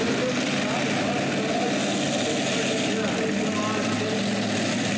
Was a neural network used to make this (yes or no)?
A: no